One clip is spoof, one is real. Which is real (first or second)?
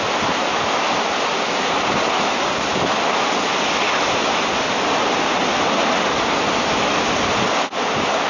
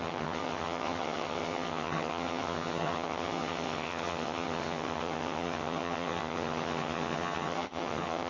first